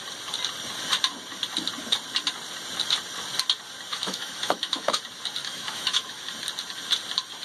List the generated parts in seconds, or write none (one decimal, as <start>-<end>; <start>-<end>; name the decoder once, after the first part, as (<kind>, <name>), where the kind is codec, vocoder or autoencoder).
3.9-5.0 (autoencoder, DAC-VAE); 5.4-6.2